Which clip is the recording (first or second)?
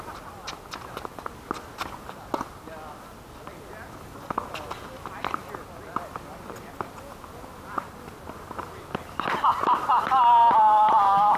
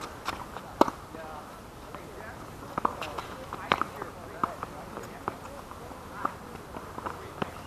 first